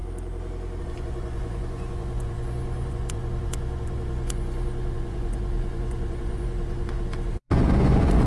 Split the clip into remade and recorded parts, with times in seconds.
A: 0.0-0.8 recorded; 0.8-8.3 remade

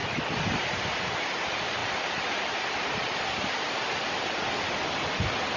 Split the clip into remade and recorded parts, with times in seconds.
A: 0.0-5.6 recorded

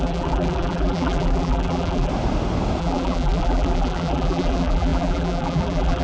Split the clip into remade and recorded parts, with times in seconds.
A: 0.0-2.1 remade; 2.1-2.8 recorded; 2.8-6.0 remade

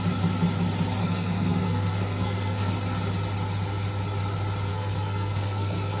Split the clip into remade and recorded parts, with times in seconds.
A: 0.0-1.0 recorded; 1.0-2.7 remade; 2.7-4.7 recorded; 4.7-6.0 remade

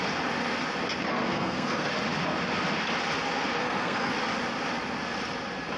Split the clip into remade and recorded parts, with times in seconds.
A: 0.0-1.1 recorded; 1.1-1.9 remade; 1.9-3.6 recorded; 3.6-4.1 remade; 4.1-5.8 recorded